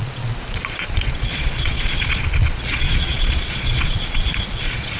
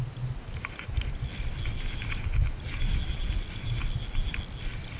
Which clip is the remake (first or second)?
first